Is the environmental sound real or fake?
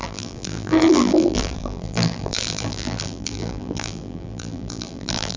fake